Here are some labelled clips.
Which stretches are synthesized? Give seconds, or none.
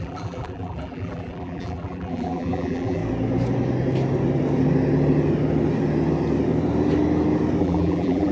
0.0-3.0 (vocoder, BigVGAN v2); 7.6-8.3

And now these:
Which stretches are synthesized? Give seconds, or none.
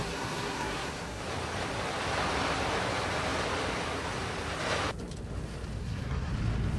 0.0-1.2 (codec, SNAC); 5.8-6.3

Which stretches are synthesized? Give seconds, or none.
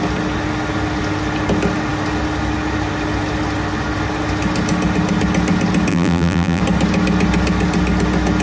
5.9-6.6 (vocoder, BigVGAN v2)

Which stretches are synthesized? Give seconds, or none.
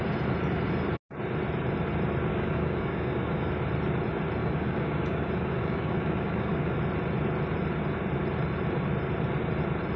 2.3-3.5 (codec, DAC); 4.4-6.8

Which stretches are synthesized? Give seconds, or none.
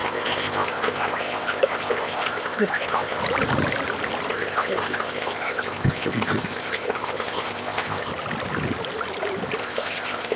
0.0-3.2 (codec, ZipCodec); 4.3-8.1; 9.6-10.4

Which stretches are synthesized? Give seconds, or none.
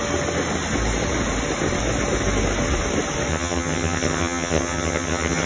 3.3-5.5 (vocoder, HiFi-GAN)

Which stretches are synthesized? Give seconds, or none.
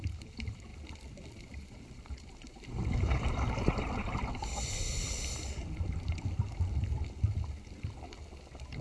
0.0-0.7 (vocoder, BigVGAN v2); 1.5-4.5